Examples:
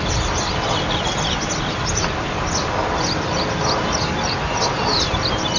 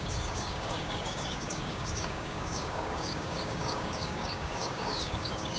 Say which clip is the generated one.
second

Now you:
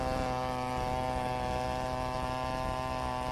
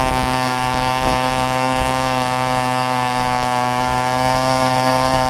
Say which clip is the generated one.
second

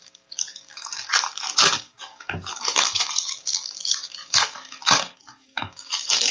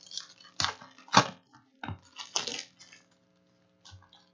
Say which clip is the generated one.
first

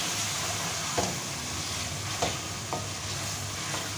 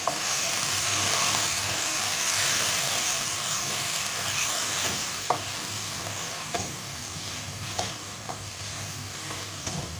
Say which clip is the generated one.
second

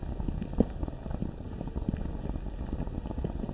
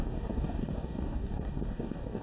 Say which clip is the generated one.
second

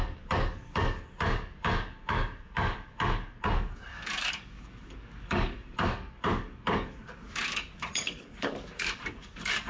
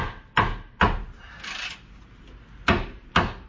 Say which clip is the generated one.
first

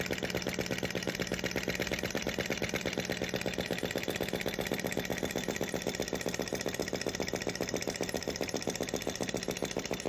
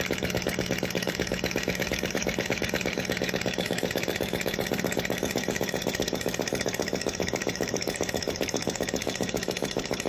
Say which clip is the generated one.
second